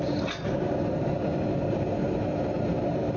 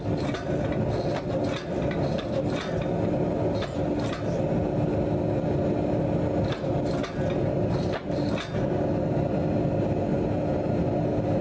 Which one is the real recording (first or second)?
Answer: second